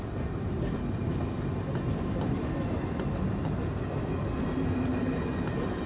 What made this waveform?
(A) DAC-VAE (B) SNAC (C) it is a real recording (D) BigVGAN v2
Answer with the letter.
C